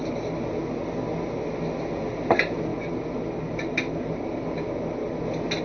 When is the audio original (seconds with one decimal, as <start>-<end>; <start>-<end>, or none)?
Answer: 0.0-5.6